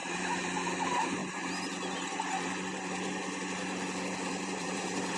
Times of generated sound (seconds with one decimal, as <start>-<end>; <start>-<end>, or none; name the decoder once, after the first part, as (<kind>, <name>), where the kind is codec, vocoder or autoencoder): 0.0-1.2 (vocoder, BigVGAN v2); 4.3-5.2